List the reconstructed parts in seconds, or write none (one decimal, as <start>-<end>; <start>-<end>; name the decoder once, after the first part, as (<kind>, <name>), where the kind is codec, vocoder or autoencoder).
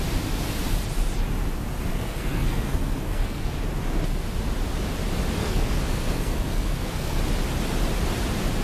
1.9-3.5 (codec, SNAC); 5.4-7.2